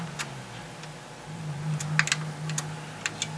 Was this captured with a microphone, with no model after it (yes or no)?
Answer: yes